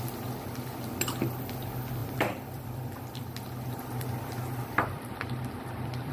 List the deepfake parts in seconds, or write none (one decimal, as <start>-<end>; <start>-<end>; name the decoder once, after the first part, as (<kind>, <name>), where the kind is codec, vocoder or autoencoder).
2.0-6.1 (vocoder, BigVGAN v2)